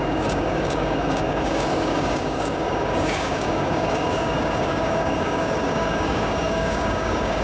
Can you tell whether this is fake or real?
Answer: fake